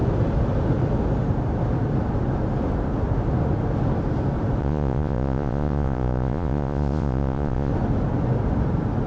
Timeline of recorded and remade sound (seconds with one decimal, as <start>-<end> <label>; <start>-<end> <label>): 0.0-4.6 recorded; 4.6-7.7 remade; 7.7-9.1 recorded